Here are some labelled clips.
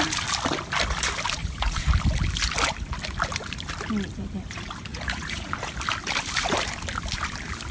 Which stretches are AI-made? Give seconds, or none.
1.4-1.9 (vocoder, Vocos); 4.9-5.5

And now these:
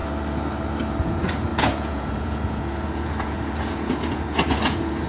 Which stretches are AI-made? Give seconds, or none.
1.0-5.1 (vocoder, Vocos)

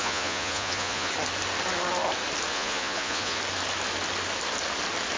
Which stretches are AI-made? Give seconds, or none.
0.0-1.1 (vocoder, Vocos); 2.5-3.4